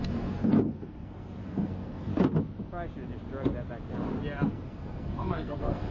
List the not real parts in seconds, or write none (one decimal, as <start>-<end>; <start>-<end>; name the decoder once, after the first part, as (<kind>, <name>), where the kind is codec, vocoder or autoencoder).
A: 0.0-2.1 (codec, SNAC); 4.5-5.9